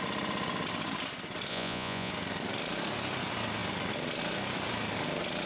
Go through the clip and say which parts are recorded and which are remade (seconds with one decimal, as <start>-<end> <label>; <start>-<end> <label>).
0.0-1.5 recorded; 1.5-2.1 remade; 2.1-5.5 recorded